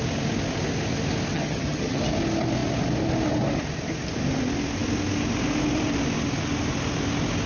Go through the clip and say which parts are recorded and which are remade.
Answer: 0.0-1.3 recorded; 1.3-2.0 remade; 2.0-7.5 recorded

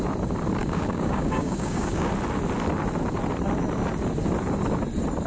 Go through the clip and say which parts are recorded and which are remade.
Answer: 0.0-0.6 recorded; 0.6-2.1 remade; 2.1-5.3 recorded

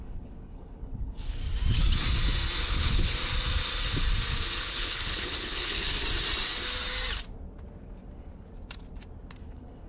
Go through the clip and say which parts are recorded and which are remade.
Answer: 0.0-1.4 remade; 1.4-2.6 recorded; 2.6-3.2 remade; 3.2-4.6 recorded; 4.6-6.0 remade; 6.0-9.4 recorded; 9.4-9.9 remade